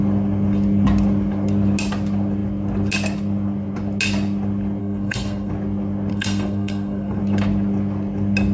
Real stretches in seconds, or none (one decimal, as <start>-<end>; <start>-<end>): 0.0-4.8; 5.5-6.1; 7.2-8.5